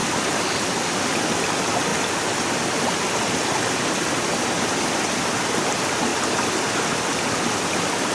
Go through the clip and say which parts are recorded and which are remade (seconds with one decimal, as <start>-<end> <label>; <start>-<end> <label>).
0.0-8.1 recorded